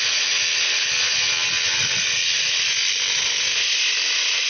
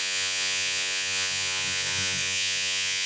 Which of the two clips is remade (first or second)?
second